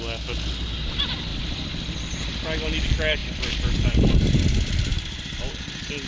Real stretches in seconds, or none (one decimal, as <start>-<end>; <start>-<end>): 0.0-1.3; 2.1-3.2; 4.4-4.9; 5.6-6.1